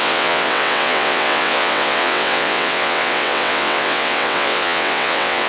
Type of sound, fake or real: fake